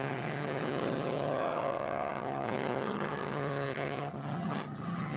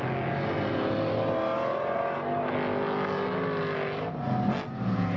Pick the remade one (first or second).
first